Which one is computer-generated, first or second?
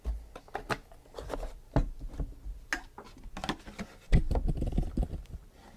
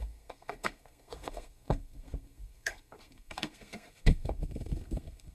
second